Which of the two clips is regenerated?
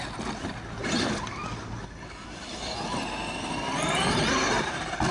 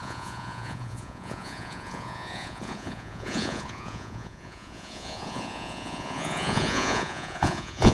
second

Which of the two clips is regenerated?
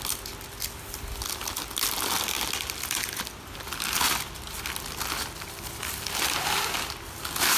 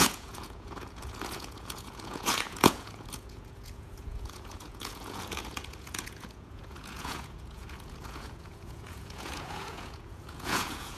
second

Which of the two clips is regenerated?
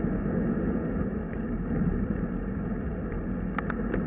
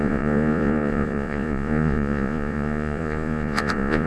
second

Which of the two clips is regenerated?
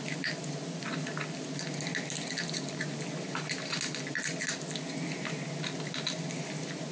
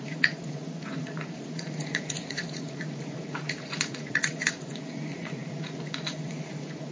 second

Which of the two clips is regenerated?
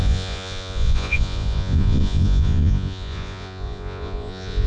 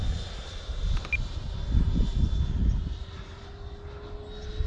first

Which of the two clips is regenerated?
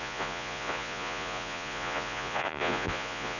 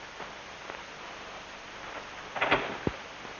first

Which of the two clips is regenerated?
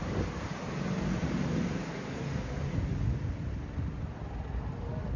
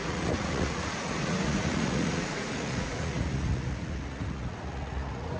second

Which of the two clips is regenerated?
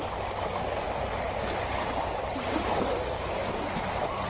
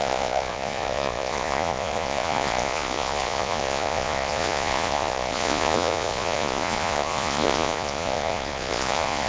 second